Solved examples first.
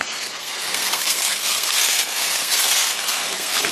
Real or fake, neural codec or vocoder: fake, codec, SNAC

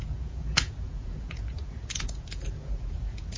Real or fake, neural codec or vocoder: fake, vocoder, Vocos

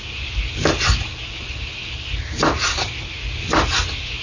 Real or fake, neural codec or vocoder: real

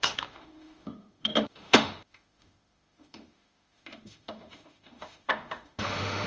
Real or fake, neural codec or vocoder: fake, autoencoder, DAC-VAE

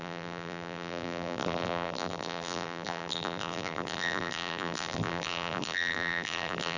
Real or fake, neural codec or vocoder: fake, vocoder, BigVGAN v2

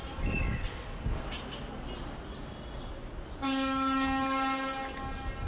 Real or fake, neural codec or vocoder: real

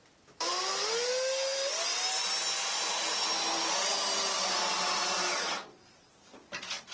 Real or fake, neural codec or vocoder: real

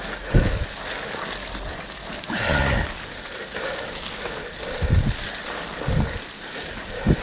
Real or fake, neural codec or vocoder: real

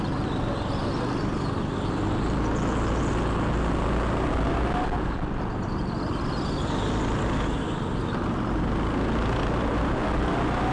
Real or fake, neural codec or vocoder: real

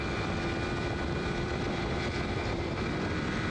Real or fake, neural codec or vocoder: fake, vocoder, BigVGAN v2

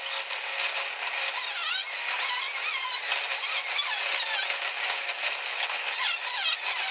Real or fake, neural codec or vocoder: real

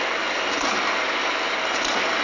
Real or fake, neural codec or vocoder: real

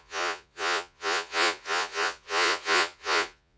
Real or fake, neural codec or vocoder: fake, vocoder, Vocos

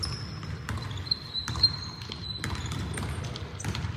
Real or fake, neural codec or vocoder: real